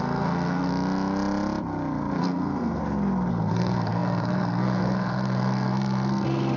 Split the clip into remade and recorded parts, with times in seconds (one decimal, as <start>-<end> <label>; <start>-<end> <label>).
0.0-0.7 remade; 0.7-2.2 recorded; 2.2-2.8 remade; 2.8-3.3 recorded; 3.3-6.6 remade